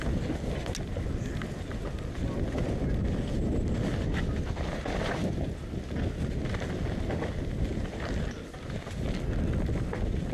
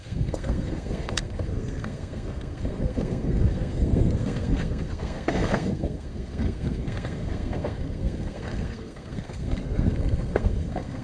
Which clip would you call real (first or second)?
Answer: first